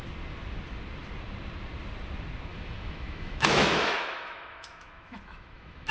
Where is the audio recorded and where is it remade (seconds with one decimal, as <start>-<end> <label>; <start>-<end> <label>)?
0.0-2.5 recorded; 2.5-5.9 remade